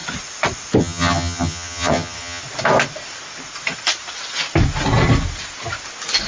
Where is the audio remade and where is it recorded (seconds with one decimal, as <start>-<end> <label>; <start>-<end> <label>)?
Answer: 0.0-0.8 recorded; 0.8-2.4 remade; 2.4-6.3 recorded